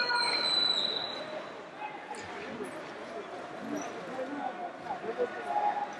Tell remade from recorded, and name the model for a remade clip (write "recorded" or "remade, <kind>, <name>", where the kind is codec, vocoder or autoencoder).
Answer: recorded